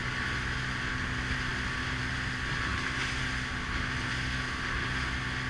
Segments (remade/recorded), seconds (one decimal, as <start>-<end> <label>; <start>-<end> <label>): 0.0-5.5 recorded